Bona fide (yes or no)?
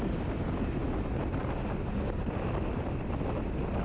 yes